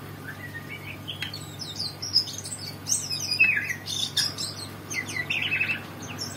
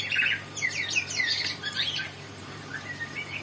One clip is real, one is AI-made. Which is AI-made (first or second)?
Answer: second